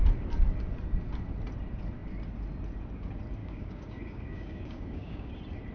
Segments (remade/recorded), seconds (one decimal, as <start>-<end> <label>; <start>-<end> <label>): 0.0-3.4 recorded; 3.4-5.3 remade; 5.3-5.7 recorded